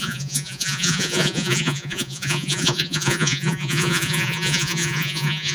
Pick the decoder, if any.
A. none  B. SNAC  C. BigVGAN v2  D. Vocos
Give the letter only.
D